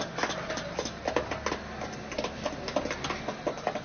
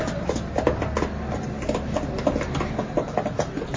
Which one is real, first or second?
first